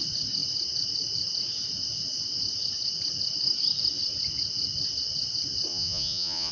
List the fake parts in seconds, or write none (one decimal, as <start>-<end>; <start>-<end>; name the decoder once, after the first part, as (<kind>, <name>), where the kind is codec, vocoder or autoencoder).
5.7-6.5 (vocoder, Vocos)

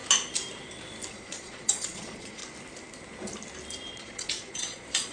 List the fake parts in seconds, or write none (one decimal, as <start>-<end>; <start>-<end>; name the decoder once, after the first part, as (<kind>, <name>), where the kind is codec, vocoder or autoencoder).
1.1-2.4 (vocoder, Vocos); 3.9-5.1

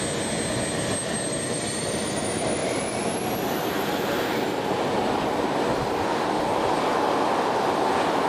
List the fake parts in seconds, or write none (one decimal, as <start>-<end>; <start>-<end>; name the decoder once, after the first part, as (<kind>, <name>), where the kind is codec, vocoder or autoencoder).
none

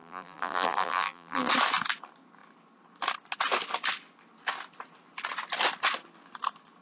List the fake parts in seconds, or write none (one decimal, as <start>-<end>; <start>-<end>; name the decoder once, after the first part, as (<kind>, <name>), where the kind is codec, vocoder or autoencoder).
0.0-1.5 (vocoder, BigVGAN v2)

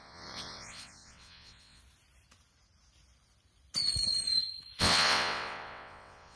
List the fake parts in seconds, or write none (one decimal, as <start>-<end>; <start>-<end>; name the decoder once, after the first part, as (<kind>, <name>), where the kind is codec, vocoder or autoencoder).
0.0-1.8 (vocoder, WaveNeXt); 4.8-6.4

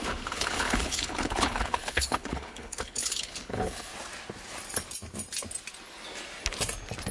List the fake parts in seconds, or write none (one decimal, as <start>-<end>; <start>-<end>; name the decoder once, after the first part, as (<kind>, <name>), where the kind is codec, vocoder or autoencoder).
0.0-3.9 (codec, HILCodec)

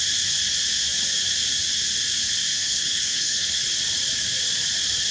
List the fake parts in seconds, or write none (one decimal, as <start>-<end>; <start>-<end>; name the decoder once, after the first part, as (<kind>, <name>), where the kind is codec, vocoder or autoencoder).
2.5-3.6 (codec, HILCodec)

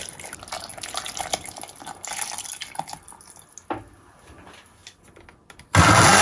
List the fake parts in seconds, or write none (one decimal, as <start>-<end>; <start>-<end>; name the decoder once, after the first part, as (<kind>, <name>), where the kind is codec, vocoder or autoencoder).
none